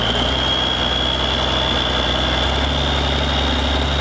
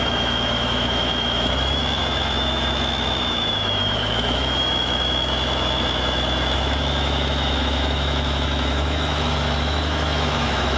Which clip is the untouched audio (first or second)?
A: first